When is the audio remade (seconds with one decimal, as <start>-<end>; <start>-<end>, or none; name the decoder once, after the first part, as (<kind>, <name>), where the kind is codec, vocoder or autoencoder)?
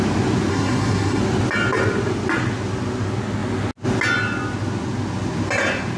0.5-1.2 (codec, SNAC)